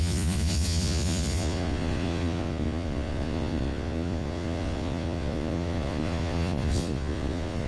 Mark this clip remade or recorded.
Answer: remade